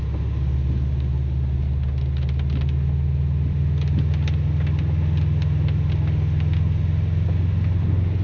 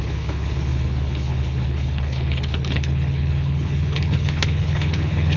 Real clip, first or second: first